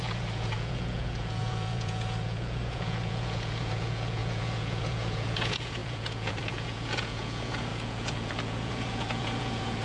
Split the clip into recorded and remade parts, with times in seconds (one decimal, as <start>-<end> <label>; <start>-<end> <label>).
0.0-9.8 remade